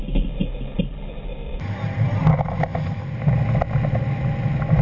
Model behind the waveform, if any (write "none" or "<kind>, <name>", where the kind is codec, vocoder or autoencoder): none